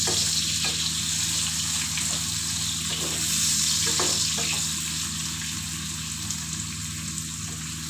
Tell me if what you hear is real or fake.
real